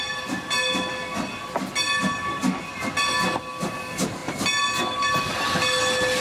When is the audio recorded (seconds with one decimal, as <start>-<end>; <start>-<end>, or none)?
0.0-6.2